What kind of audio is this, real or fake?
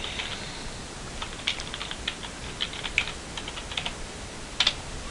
real